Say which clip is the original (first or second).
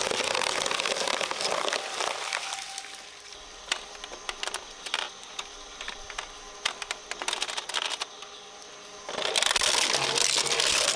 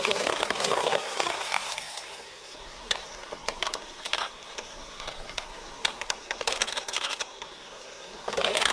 first